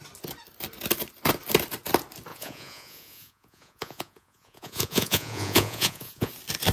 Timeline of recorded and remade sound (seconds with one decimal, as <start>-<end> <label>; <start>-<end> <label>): 0.0-2.3 recorded; 2.3-6.3 remade; 6.3-6.7 recorded